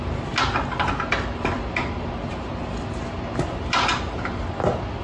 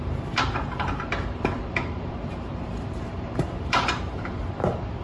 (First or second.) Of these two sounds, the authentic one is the first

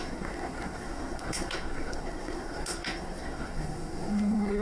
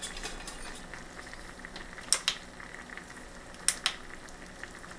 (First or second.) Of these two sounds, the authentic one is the second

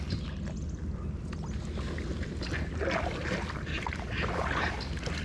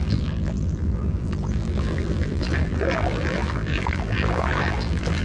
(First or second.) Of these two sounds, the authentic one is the first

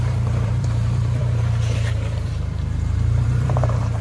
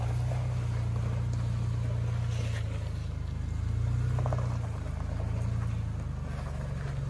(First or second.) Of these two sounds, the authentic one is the second